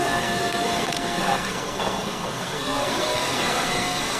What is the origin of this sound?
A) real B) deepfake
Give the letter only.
B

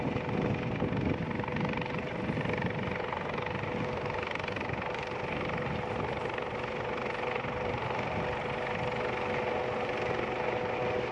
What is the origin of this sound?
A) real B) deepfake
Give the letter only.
A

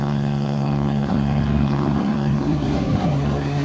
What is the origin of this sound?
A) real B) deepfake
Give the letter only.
B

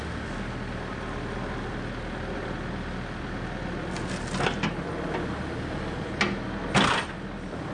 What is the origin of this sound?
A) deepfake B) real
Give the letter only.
B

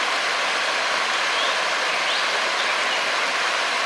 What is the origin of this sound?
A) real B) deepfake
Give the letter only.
A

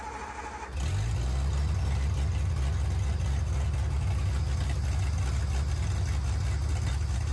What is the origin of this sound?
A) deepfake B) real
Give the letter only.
B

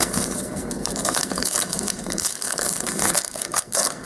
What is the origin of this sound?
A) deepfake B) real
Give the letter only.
A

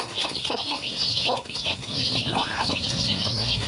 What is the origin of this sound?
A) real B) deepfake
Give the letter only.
B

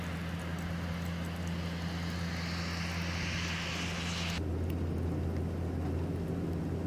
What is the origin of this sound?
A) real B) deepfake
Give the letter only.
A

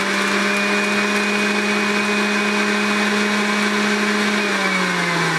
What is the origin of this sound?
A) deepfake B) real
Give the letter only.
B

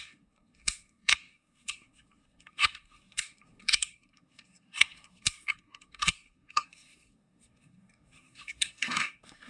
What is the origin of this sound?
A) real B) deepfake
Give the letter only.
B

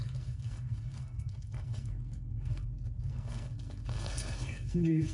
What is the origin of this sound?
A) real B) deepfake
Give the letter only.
B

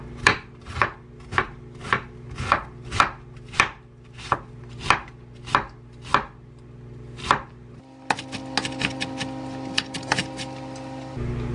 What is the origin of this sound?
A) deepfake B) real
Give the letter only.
B